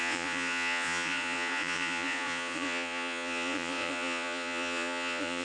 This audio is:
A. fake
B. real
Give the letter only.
A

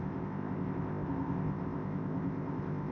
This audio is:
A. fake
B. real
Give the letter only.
A